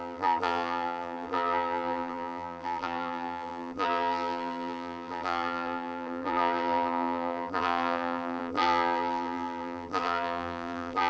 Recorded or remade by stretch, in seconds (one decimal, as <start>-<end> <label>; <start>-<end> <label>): 0.0-11.1 remade